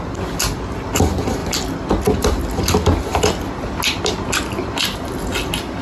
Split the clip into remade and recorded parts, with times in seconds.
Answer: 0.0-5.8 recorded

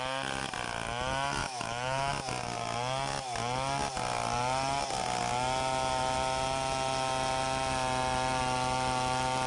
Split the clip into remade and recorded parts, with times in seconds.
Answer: 0.0-1.4 recorded; 1.4-2.1 remade; 2.1-9.5 recorded

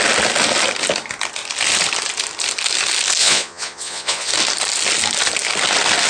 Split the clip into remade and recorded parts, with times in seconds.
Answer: 0.0-3.2 recorded; 3.2-4.3 remade; 4.3-6.1 recorded

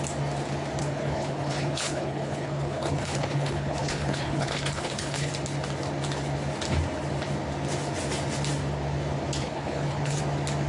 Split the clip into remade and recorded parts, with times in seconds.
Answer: 0.0-0.8 recorded; 0.8-5.3 remade; 5.3-9.4 recorded; 9.4-10.2 remade; 10.2-10.7 recorded

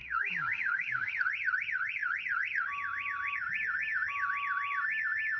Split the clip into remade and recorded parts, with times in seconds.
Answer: 0.0-1.1 remade; 1.1-5.4 recorded